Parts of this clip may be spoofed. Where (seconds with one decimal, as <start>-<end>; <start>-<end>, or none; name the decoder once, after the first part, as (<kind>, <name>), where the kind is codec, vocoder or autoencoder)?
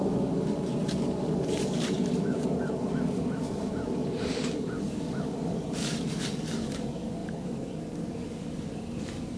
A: 0.0-9.4 (codec, DAC)